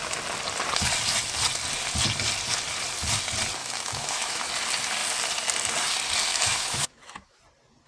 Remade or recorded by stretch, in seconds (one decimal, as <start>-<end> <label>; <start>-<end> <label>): 0.0-3.6 recorded; 3.6-4.5 remade; 4.5-6.3 recorded; 6.3-7.4 remade; 7.4-7.9 recorded